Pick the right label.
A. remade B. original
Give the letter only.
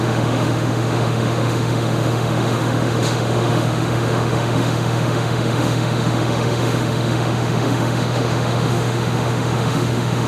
A